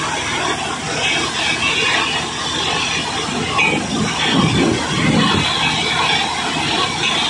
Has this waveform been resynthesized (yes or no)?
no